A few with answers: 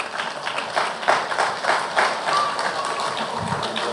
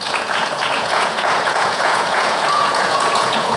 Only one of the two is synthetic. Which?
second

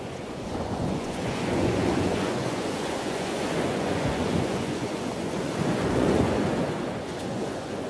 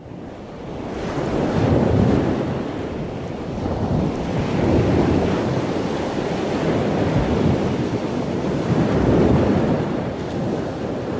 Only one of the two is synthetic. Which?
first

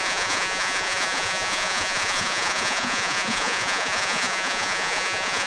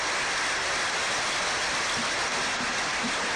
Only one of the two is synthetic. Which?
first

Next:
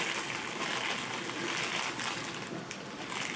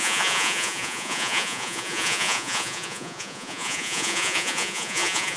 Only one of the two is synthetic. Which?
second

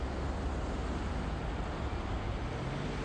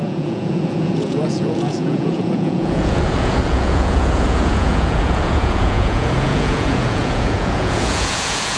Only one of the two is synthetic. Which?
second